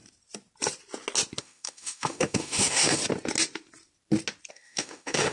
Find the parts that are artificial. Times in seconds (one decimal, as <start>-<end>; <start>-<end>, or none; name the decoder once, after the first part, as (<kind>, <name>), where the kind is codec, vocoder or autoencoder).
1.4-3.0 (autoencoder, DAC-VAE); 4.5-5.3

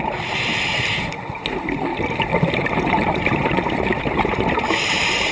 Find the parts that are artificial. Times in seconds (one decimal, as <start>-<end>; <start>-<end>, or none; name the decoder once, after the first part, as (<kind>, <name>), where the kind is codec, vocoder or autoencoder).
1.9-5.3 (vocoder, BigVGAN v2)